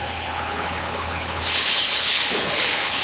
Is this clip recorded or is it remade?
remade